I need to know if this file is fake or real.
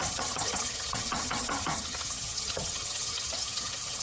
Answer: fake